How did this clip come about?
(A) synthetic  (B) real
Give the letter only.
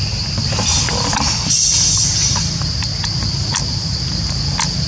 B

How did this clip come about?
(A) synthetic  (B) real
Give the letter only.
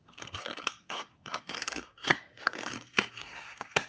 A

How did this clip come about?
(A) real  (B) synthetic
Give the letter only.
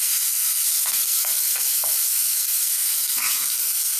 B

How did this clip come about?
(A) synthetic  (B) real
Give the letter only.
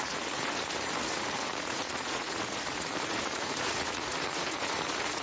A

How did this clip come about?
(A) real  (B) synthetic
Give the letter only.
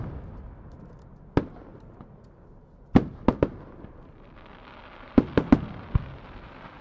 A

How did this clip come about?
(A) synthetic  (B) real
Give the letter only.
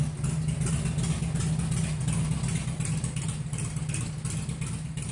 B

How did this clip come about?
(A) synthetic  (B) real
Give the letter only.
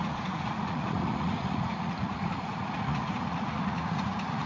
A